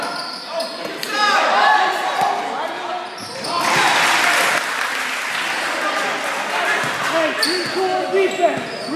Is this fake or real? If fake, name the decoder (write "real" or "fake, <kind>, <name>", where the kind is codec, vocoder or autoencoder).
real